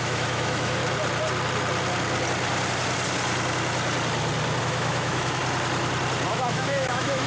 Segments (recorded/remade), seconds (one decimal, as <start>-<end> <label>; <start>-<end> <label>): 0.0-0.8 remade; 0.8-4.6 recorded; 4.6-5.4 remade; 5.4-6.3 recorded; 6.3-7.3 remade